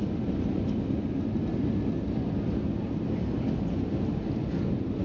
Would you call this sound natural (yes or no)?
yes